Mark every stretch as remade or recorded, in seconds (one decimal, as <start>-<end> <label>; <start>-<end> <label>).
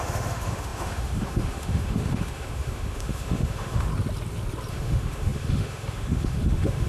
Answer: 0.0-3.9 remade; 3.9-4.7 recorded; 4.7-6.9 remade